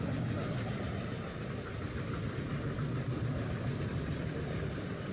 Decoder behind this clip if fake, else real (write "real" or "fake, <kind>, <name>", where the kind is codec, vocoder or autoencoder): real